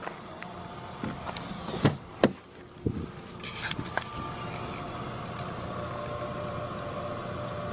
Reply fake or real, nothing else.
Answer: real